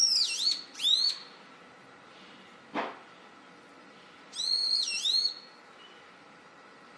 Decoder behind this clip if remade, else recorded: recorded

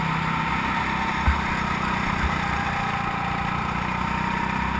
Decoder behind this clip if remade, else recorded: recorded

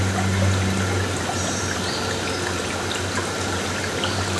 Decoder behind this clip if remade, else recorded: recorded